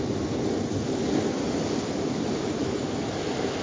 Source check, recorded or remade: recorded